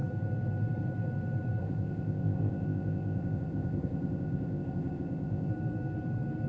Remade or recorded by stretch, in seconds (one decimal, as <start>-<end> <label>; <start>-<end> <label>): 0.0-1.6 recorded; 1.6-5.5 remade; 5.5-6.5 recorded